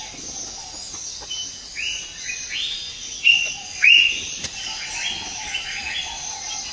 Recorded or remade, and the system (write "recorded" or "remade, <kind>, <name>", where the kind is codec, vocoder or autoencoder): recorded